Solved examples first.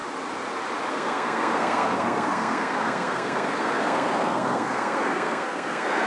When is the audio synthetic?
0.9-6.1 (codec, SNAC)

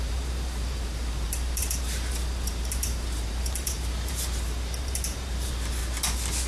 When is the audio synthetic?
0.0-5.8 (vocoder, BigVGAN v2)

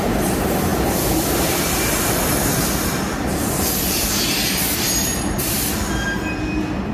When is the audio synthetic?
none

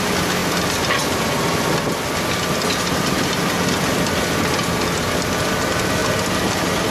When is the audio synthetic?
none

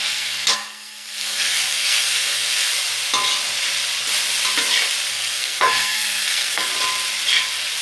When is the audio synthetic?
0.0-2.7 (codec, SNAC); 5.1-6.7

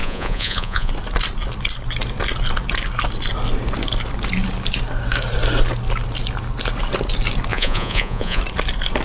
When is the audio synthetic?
0.0-0.9 (vocoder, Vocos); 7.5-8.4